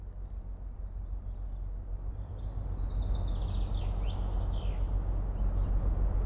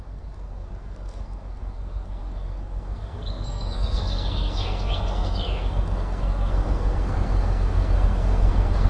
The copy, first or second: second